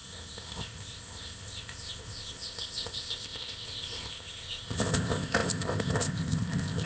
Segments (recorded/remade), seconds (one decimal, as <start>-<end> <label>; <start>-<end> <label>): 0.0-6.9 remade

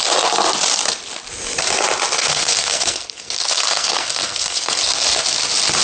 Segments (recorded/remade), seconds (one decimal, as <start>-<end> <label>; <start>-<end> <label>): 0.0-2.2 recorded; 2.2-4.8 remade; 4.8-5.8 recorded

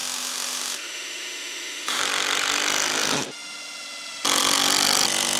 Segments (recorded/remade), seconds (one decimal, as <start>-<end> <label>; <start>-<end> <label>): 0.0-2.0 remade; 2.0-5.4 recorded

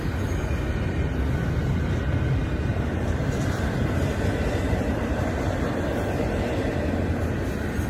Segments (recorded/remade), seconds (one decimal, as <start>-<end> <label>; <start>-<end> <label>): 0.0-2.4 recorded; 2.4-7.0 remade; 7.0-7.9 recorded

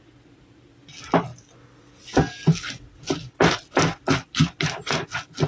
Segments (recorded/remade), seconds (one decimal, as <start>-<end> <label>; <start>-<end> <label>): 0.0-5.5 recorded

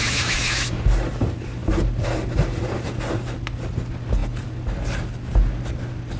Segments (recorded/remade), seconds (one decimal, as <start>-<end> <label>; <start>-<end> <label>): 0.0-0.8 remade; 0.8-6.2 recorded

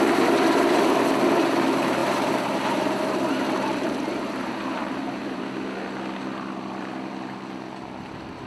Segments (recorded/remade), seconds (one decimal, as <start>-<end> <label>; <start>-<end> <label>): 0.0-2.0 recorded; 2.0-5.4 remade; 5.4-8.5 recorded